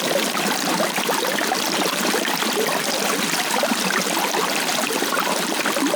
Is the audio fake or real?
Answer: real